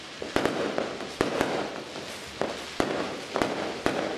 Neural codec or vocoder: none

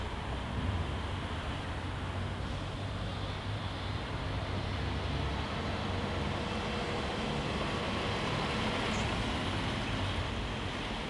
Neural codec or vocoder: none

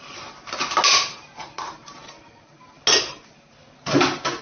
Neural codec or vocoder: none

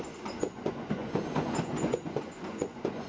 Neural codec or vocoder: vocoder, Vocos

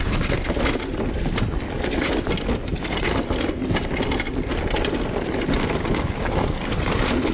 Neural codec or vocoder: none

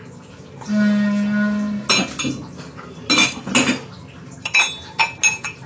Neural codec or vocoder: none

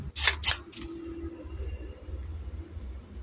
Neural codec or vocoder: none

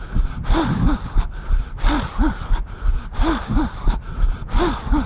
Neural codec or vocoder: none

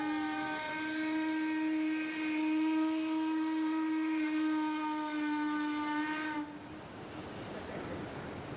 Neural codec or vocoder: none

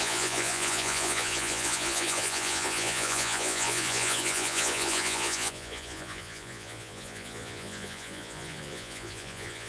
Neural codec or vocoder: vocoder, Vocos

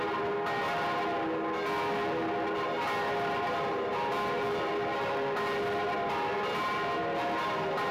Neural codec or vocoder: none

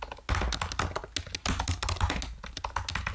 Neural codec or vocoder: none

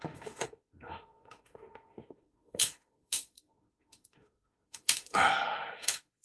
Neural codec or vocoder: autoencoder, DAC-VAE